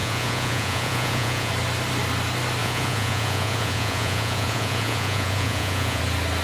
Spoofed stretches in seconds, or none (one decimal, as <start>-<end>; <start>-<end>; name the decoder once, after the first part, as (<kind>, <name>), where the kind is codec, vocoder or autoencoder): 0.0-1.5 (vocoder, Vocos); 2.6-6.0